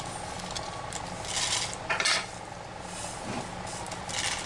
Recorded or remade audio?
recorded